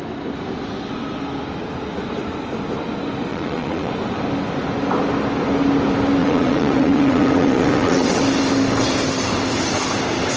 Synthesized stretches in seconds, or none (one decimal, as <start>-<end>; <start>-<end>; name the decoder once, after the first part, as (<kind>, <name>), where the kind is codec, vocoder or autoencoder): 3.3-3.9 (vocoder, WaveNeXt); 6.2-8.2